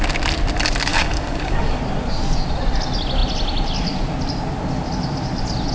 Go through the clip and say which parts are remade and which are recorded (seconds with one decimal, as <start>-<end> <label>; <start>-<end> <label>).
0.0-0.9 recorded; 0.9-1.8 remade; 1.8-5.7 recorded